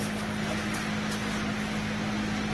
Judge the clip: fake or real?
real